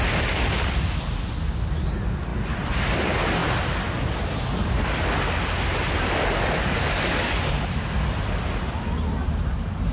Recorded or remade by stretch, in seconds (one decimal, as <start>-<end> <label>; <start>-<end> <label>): 0.0-9.9 recorded